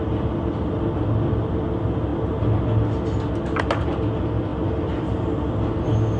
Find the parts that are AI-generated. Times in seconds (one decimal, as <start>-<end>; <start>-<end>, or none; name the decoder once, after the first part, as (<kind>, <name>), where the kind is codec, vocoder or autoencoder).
4.5-5.5 (vocoder, BigVGAN v2)